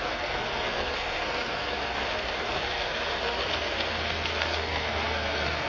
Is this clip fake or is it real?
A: fake